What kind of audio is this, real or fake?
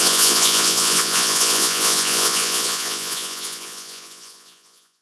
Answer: fake